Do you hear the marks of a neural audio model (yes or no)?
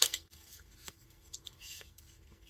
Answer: yes